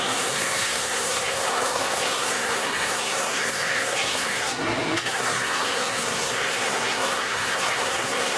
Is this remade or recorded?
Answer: remade